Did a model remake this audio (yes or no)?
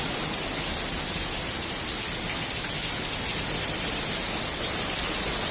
no